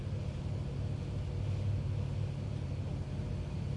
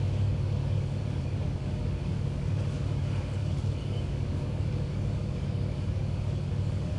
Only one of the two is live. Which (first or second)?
first